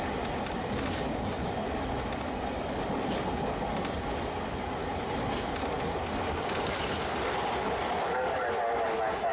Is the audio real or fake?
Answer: real